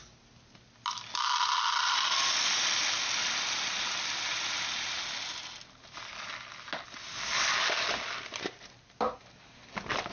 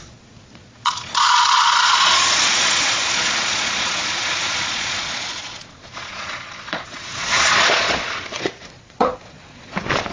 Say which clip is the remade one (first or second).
second